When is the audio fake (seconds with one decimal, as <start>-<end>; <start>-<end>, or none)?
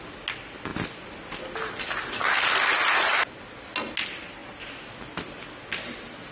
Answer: none